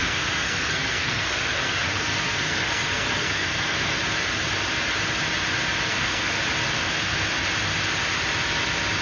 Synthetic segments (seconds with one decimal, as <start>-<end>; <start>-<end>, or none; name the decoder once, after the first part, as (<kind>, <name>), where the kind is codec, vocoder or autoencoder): 0.0-4.0 (codec, SNAC); 5.9-6.4